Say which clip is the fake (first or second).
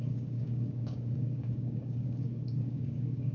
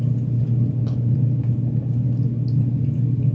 first